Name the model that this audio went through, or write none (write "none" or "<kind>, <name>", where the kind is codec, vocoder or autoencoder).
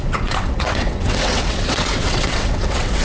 vocoder, WaveNeXt